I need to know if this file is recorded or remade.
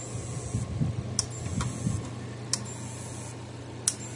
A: recorded